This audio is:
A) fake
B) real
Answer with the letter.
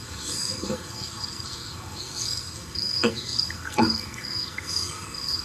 A